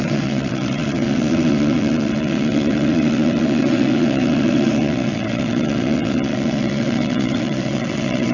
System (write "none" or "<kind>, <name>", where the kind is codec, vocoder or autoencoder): vocoder, WaveNeXt